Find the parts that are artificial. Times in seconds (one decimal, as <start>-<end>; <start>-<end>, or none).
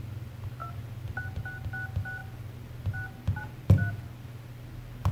none